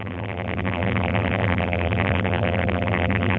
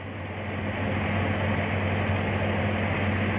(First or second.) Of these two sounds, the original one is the second